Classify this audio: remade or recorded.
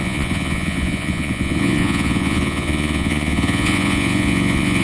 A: remade